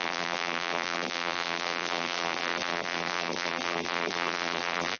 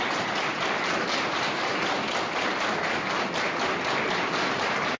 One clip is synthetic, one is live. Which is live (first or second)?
second